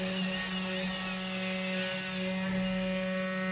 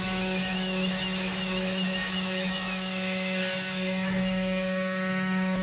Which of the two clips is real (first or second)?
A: first